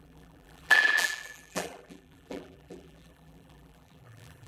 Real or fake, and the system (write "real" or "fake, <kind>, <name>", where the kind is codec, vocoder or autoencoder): fake, vocoder, BigVGAN v2